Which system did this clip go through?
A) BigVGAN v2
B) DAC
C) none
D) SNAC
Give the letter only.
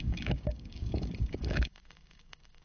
B